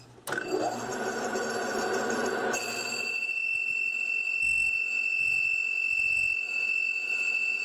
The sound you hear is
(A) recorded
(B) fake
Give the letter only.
A